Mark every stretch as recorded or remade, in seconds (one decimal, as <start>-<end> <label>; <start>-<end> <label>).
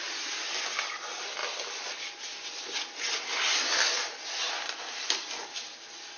0.0-6.2 recorded